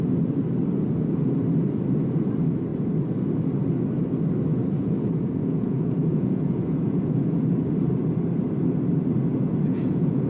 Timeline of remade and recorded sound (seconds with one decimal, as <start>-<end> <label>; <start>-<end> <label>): 0.0-4.6 recorded; 4.6-7.4 remade; 7.4-9.3 recorded; 9.3-10.3 remade